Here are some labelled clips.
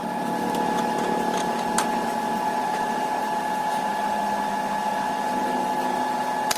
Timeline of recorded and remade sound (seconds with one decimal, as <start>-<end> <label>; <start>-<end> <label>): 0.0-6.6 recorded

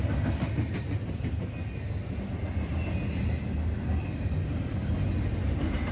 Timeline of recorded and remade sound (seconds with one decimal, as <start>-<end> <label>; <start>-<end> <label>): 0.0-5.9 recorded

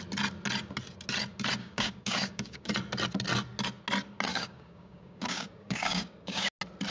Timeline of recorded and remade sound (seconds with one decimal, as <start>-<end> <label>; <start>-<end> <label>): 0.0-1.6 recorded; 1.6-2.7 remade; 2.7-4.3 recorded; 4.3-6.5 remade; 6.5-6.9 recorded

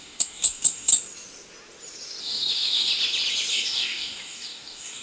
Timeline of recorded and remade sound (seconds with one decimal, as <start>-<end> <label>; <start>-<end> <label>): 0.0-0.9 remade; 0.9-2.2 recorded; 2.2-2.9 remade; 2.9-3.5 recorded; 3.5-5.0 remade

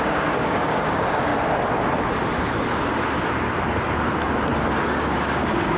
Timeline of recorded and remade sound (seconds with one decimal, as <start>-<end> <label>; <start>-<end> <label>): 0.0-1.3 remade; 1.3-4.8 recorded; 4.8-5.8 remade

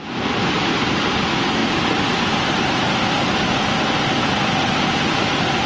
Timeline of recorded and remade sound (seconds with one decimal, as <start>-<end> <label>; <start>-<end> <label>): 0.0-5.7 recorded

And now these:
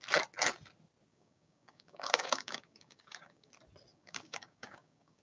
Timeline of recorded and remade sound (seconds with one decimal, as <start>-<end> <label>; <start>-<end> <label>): 0.0-1.1 recorded; 1.1-3.5 remade; 3.5-3.9 recorded; 3.9-5.2 remade